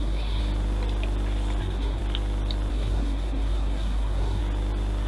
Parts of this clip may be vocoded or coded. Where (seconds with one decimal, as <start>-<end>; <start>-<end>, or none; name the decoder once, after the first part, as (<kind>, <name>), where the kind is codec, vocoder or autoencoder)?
0.0-0.4 (codec, SNAC); 1.6-2.0; 2.7-4.4